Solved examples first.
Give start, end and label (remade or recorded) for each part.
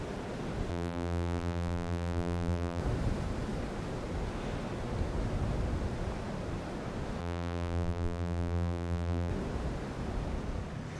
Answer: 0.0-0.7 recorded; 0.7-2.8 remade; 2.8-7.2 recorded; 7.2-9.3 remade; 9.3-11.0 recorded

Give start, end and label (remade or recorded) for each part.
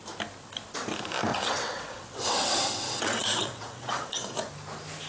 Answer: 0.0-1.3 recorded; 1.3-4.4 remade; 4.4-5.1 recorded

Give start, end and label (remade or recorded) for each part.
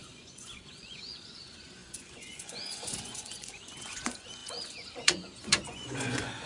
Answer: 0.0-6.5 remade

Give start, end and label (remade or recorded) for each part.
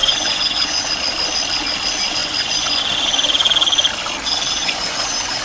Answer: 0.0-0.9 remade; 0.9-2.2 recorded; 2.2-2.8 remade; 2.8-4.6 recorded; 4.6-5.4 remade